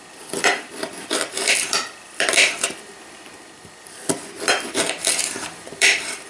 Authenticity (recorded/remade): remade